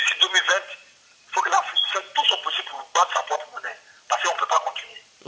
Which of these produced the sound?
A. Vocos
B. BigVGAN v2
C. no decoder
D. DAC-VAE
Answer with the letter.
A